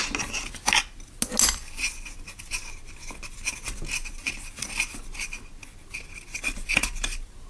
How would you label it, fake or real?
real